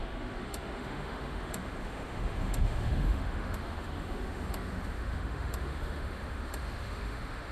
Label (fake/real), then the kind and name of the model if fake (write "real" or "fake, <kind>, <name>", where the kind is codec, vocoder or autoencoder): fake, autoencoder, DAC-VAE